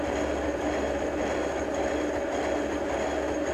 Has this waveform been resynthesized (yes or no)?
no